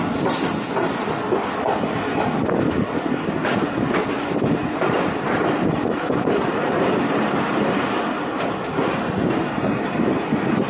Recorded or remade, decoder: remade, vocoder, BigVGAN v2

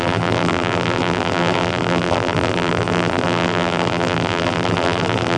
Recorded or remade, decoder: remade, vocoder, BigVGAN v2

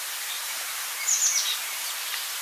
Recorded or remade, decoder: remade, vocoder, BigVGAN v2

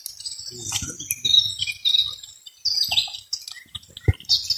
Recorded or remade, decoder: recorded